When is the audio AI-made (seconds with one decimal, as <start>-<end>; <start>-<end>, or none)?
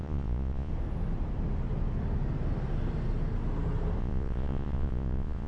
0.0-0.7; 4.0-5.5